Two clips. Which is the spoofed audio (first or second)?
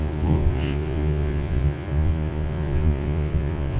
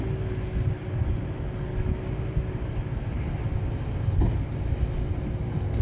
first